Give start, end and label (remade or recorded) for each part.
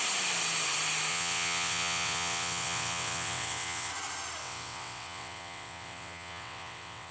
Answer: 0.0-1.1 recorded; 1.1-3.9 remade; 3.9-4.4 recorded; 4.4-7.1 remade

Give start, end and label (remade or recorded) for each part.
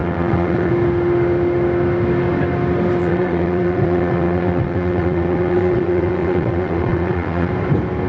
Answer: 0.0-0.7 remade; 0.7-3.0 recorded; 3.0-7.5 remade; 7.5-8.1 recorded